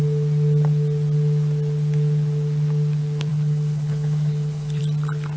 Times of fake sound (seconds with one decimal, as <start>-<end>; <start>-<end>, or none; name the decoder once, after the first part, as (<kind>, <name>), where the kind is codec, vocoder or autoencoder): 3.3-4.8 (codec, HILCodec)